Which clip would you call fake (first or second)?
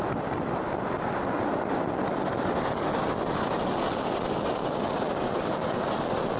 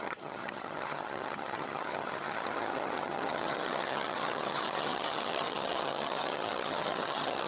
second